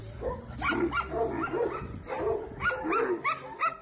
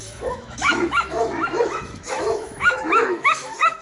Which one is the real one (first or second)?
first